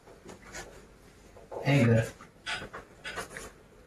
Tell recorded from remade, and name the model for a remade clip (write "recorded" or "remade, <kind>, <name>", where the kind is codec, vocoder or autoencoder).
recorded